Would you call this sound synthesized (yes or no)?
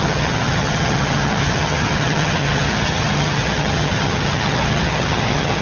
yes